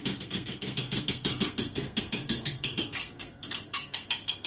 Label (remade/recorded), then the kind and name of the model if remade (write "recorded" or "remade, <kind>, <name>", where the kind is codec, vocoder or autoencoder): remade, codec, SNAC